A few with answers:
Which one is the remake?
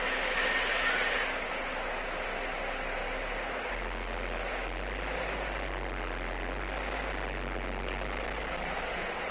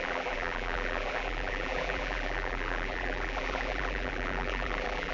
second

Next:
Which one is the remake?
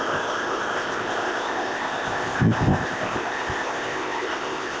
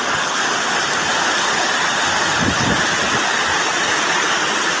first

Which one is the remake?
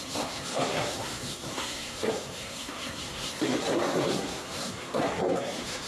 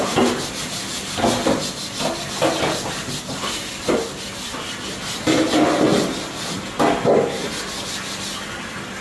first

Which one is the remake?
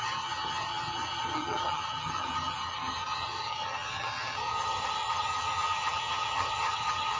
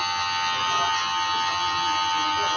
first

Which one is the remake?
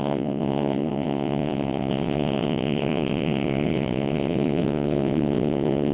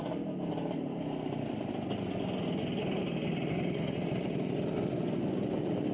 first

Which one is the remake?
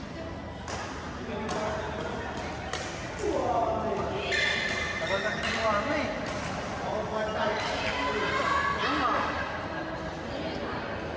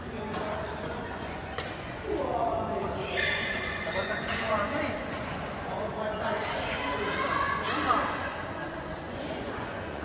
second